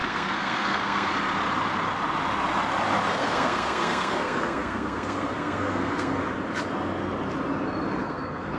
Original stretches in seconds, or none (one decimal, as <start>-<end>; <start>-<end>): 1.1-3.1; 6.2-8.0